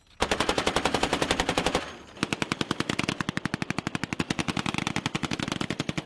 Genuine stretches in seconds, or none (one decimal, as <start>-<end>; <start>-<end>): 0.0-6.1